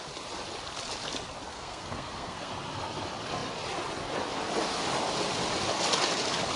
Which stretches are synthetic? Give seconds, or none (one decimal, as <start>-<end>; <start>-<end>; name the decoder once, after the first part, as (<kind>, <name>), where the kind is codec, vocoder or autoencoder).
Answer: 1.5-2.5 (codec, SNAC)